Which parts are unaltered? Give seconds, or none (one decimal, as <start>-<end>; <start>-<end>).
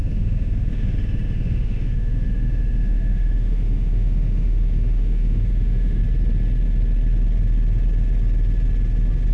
6.0-9.3